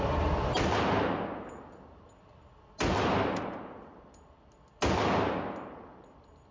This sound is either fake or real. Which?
real